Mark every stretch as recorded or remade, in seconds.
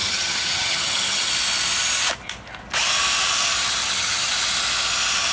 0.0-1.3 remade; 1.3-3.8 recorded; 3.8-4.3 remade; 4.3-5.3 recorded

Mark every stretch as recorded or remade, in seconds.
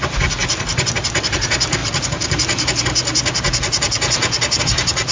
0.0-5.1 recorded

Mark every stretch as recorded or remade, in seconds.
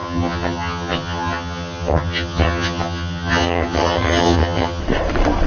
0.0-4.8 remade; 4.8-5.5 recorded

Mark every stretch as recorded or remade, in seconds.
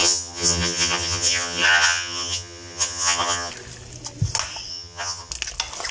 0.0-3.5 remade; 3.5-4.7 recorded; 4.7-5.3 remade; 5.3-5.9 recorded